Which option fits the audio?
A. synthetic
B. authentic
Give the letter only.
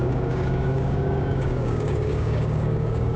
A